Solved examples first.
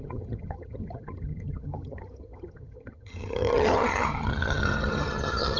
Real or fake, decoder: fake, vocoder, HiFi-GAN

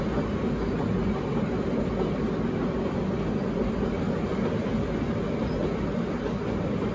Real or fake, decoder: real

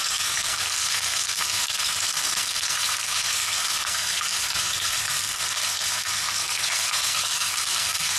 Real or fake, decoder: fake, codec, SNAC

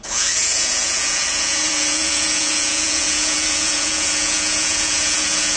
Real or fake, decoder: fake, vocoder, Vocos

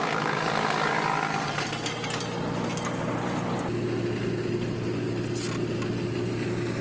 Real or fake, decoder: real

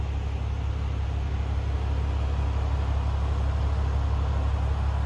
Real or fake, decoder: real